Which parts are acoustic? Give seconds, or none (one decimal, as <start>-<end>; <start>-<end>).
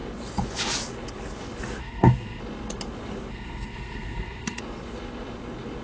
0.0-1.8; 2.4-3.3; 4.6-5.8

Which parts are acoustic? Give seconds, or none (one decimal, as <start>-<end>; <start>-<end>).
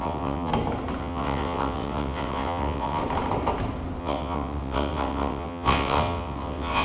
0.5-1.0; 3.0-4.0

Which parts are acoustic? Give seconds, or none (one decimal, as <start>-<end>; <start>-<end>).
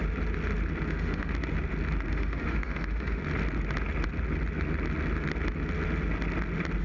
0.0-0.9; 1.3-2.1; 3.2-6.8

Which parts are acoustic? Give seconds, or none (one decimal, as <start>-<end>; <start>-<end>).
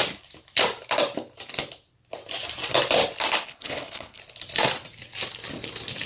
0.0-3.4; 4.2-6.1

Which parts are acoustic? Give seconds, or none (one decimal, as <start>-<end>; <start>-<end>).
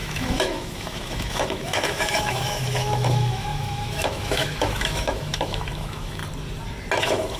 6.2-7.0